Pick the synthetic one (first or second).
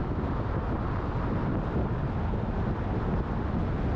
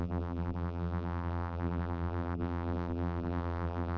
second